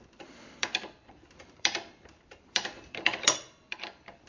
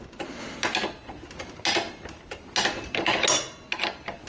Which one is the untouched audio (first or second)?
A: second